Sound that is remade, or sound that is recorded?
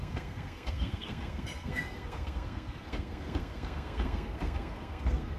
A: remade